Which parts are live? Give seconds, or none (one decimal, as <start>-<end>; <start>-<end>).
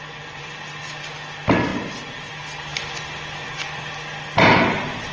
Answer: 0.0-1.7; 2.3-5.1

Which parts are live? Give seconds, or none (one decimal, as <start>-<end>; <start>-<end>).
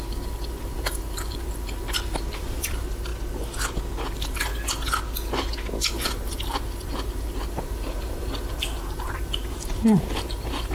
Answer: 3.1-4.1; 4.5-5.9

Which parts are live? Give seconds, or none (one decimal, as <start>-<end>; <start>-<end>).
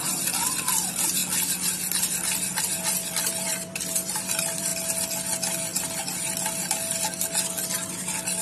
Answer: 1.2-2.6; 4.7-8.4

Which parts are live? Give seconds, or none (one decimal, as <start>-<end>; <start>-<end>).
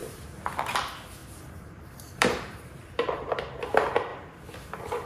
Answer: 0.5-1.2; 3.5-5.1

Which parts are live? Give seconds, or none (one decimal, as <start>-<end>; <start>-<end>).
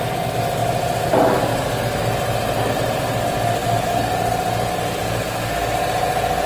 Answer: 0.0-0.6; 1.1-6.5